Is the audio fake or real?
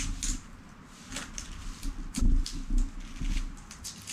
real